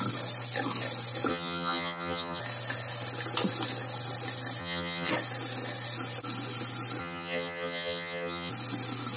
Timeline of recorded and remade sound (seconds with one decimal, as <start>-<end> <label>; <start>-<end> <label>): 0.0-1.3 recorded; 1.3-2.4 remade; 2.4-4.6 recorded; 4.6-5.1 remade; 5.1-7.0 recorded; 7.0-8.5 remade; 8.5-9.2 recorded